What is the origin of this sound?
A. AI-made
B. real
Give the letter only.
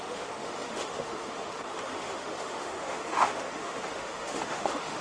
A